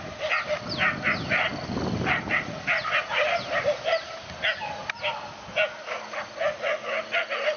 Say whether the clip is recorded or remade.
recorded